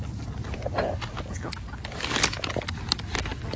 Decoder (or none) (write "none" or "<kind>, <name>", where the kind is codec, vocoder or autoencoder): none